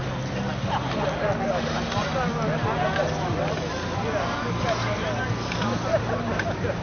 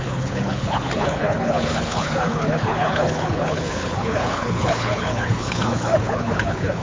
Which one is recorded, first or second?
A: first